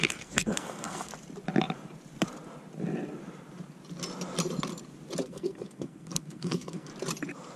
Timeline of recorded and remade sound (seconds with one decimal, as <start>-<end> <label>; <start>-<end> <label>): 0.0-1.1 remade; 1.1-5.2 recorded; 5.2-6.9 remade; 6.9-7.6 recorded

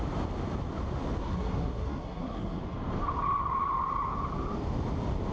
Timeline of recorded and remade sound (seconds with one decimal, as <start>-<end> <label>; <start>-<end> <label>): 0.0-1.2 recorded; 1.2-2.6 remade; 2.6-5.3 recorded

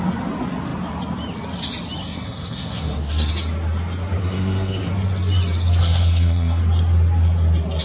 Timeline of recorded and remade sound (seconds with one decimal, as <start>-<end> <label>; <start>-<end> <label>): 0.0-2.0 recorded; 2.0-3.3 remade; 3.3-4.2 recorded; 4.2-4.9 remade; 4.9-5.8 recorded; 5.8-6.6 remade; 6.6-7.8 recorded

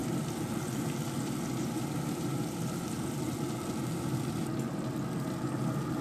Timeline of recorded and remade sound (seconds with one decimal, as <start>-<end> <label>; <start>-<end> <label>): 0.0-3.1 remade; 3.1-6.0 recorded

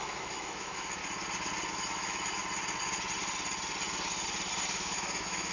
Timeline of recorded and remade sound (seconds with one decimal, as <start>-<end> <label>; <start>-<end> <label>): 0.0-1.0 remade; 1.0-1.7 recorded; 1.7-2.4 remade; 2.4-4.7 recorded; 4.7-5.5 remade